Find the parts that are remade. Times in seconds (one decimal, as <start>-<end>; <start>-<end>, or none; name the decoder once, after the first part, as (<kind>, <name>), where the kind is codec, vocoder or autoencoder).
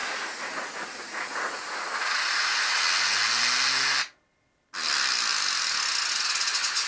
0.0-2.8 (vocoder, Vocos)